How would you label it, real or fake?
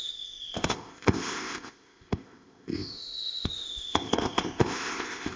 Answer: fake